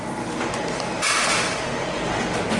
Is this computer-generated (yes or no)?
no